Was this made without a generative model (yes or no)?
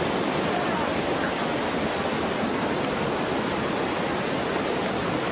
yes